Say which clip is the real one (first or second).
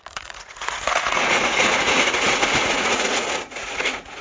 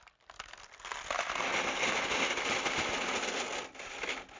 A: second